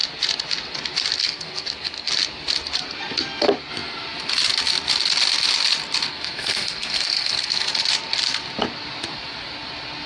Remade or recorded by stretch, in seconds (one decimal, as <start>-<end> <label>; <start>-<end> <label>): 0.0-1.2 recorded; 1.2-2.1 remade; 2.1-6.1 recorded; 6.1-7.7 remade; 7.7-10.1 recorded